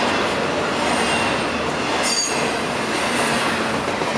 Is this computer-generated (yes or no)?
no